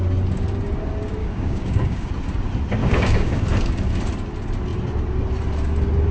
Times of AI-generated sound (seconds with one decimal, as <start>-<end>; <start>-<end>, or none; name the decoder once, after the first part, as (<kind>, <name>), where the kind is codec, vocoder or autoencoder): 1.2-2.1 (codec, DAC); 2.8-3.4